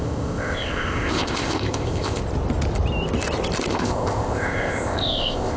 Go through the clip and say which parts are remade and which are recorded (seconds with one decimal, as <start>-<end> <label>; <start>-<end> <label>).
0.0-2.2 remade; 2.2-3.7 recorded; 3.7-5.6 remade